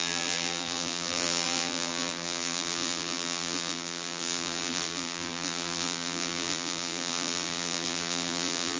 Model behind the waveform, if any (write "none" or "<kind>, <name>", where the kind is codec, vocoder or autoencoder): vocoder, BigVGAN v2